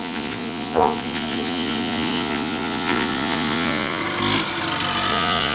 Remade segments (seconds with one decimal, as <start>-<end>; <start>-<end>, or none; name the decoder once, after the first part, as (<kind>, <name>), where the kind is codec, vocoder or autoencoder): 0.0-4.0 (vocoder, Vocos); 5.1-5.5